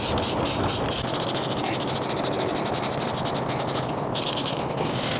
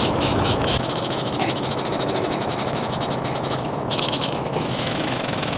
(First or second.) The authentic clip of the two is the first